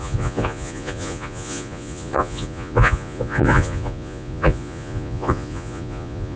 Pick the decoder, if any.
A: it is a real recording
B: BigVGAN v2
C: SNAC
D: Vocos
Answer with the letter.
D